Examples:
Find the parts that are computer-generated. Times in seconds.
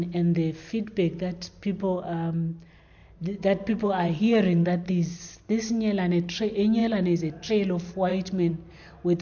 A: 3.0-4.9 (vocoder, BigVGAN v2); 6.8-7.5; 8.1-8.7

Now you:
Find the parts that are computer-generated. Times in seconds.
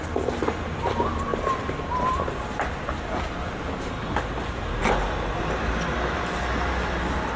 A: none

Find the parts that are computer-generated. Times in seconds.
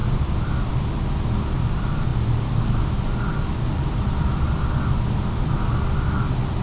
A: none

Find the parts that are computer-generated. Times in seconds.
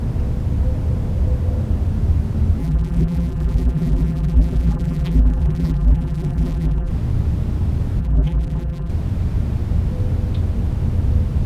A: 2.6-6.9 (vocoder, BigVGAN v2); 8.0-8.9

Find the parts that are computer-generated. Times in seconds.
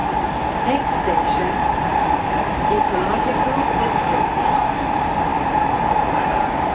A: 0.0-0.6 (vocoder, BigVGAN v2); 1.9-4.2; 5.3-6.7